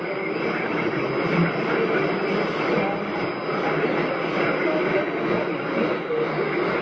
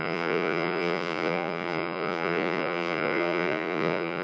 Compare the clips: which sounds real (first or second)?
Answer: first